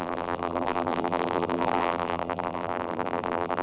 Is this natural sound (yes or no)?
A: no